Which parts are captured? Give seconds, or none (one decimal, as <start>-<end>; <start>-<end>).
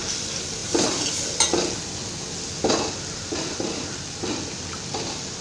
0.0-5.4